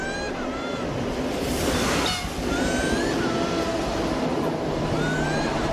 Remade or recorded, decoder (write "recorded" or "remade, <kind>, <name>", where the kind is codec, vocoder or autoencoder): recorded